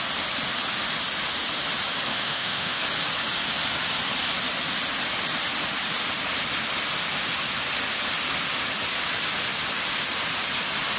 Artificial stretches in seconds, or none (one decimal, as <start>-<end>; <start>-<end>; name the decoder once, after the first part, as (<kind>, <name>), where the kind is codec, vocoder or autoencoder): 2.1-2.8 (autoencoder, DAC-VAE)